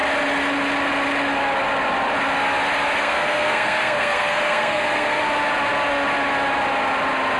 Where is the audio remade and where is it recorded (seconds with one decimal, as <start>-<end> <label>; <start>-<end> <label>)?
0.0-3.0 recorded; 3.0-5.2 remade; 5.2-7.4 recorded